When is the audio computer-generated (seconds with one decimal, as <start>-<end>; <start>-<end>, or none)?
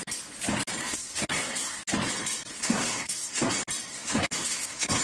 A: 0.8-1.8; 2.5-3.5; 3.9-5.0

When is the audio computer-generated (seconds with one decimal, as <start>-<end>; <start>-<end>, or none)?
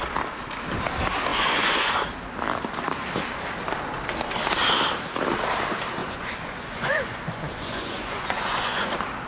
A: 1.3-1.9; 6.0-8.9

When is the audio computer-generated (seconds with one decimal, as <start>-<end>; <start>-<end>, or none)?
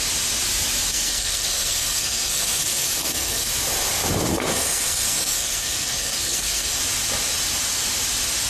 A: 0.9-3.5; 4.3-6.8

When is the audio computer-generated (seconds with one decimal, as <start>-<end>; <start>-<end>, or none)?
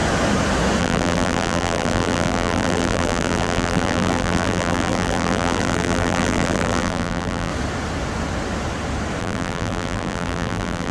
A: 0.8-7.5; 9.2-10.9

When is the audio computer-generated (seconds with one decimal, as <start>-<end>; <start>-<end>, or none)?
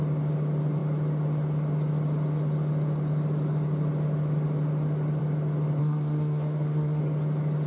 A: 5.8-7.0